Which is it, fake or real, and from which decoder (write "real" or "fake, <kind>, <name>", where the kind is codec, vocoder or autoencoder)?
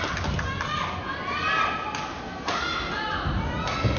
real